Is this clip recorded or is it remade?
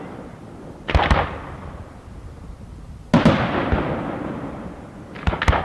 recorded